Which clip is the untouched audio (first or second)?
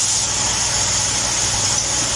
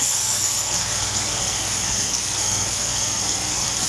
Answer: first